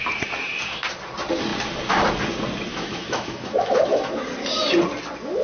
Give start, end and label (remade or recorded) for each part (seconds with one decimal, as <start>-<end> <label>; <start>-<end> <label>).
0.0-2.7 recorded; 2.7-4.2 remade; 4.2-5.4 recorded

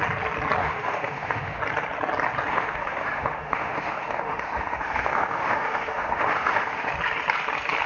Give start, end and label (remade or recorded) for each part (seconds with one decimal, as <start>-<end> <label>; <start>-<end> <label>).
0.0-0.6 recorded; 0.6-1.6 remade; 1.6-2.5 recorded; 2.5-6.9 remade; 6.9-7.9 recorded

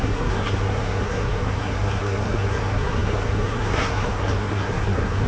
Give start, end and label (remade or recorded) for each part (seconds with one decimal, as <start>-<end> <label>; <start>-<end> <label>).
0.0-5.3 remade

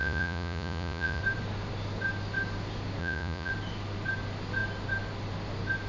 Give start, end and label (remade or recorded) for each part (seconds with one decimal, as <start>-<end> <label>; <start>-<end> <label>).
0.0-1.2 remade; 1.2-3.0 recorded; 3.0-3.5 remade; 3.5-5.9 recorded

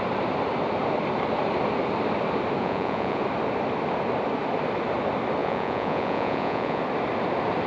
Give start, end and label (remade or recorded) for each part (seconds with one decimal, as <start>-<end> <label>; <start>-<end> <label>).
0.0-2.6 recorded; 2.6-3.2 remade; 3.2-5.4 recorded; 5.4-6.8 remade; 6.8-7.7 recorded

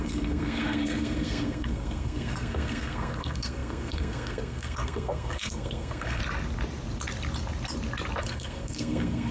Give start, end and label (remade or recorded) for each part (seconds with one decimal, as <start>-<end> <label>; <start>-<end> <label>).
0.0-6.2 remade; 6.2-8.2 recorded; 8.2-9.3 remade

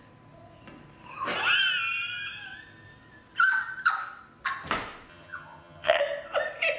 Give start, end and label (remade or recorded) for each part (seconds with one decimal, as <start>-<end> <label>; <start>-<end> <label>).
0.0-5.1 recorded; 5.1-6.0 remade; 6.0-6.8 recorded